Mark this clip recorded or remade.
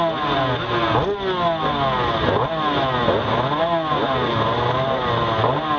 recorded